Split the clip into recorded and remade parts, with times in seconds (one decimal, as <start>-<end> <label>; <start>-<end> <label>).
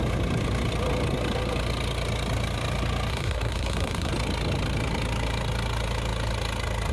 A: 0.0-3.1 recorded; 3.1-4.1 remade; 4.1-6.9 recorded